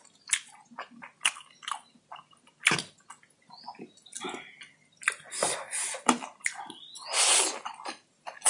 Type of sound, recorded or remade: recorded